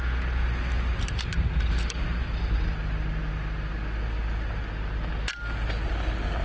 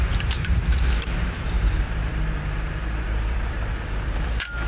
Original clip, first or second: first